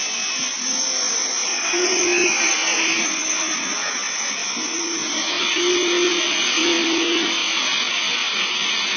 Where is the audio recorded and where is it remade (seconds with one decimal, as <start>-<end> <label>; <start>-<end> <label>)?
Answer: 0.0-9.0 recorded